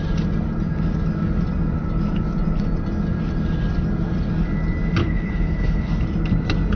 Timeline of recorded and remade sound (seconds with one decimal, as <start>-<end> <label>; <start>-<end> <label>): 0.0-5.0 recorded; 5.0-5.9 remade; 5.9-6.8 recorded